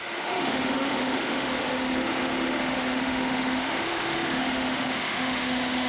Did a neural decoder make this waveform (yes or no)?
yes